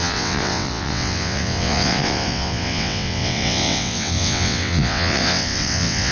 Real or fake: fake